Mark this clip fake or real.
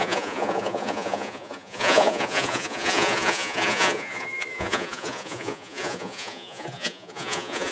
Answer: fake